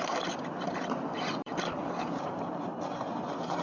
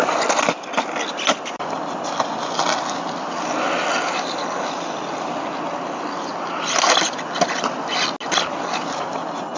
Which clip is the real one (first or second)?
second